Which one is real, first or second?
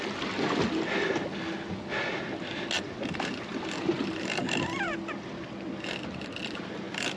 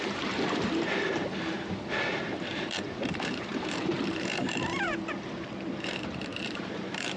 first